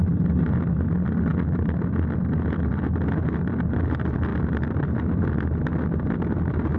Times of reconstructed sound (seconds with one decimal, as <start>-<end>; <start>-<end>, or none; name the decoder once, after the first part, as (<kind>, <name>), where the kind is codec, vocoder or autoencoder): 4.3-5.3 (vocoder, BigVGAN v2)